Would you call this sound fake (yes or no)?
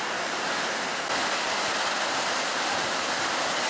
no